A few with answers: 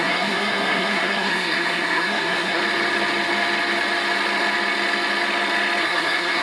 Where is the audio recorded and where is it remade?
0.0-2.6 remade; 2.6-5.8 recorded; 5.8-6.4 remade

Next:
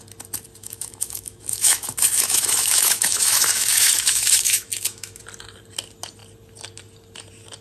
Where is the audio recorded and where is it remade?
0.0-0.6 recorded; 0.6-5.2 remade; 5.2-7.6 recorded